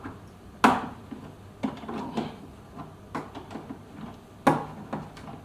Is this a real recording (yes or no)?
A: yes